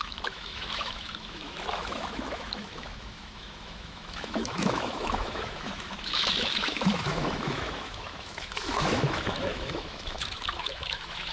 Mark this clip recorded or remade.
remade